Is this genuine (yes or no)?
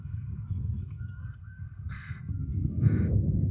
no